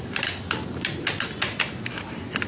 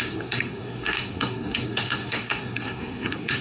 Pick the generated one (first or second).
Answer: second